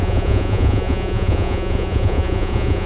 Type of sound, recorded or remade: remade